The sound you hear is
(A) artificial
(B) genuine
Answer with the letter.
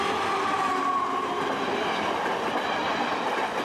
B